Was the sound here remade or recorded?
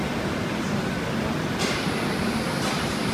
recorded